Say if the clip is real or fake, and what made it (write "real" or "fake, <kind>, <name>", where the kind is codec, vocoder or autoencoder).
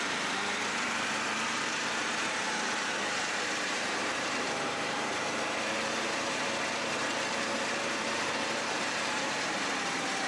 fake, vocoder, BigVGAN v2